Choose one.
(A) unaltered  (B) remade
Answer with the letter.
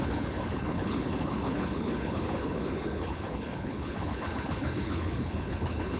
B